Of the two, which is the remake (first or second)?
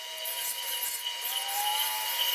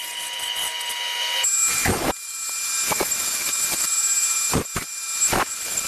first